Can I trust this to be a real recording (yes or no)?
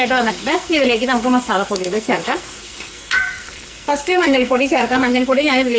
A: no